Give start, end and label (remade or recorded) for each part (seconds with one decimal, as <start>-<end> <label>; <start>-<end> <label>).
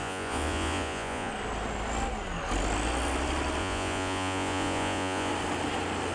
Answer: 0.0-1.3 remade; 1.3-3.6 recorded; 3.6-5.3 remade; 5.3-6.1 recorded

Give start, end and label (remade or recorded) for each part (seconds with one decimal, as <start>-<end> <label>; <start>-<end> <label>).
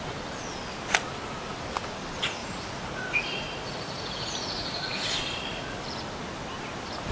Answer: 0.0-2.4 recorded; 2.4-5.8 remade; 5.8-7.1 recorded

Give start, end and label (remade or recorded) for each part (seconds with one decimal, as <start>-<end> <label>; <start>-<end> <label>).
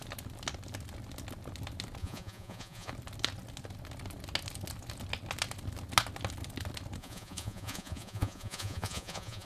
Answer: 0.0-2.0 recorded; 2.0-2.9 remade; 2.9-7.0 recorded; 7.0-9.5 remade